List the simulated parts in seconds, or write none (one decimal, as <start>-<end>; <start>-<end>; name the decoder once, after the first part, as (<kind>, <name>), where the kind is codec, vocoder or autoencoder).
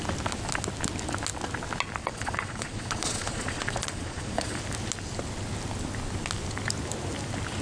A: 2.0-4.6 (vocoder, Vocos)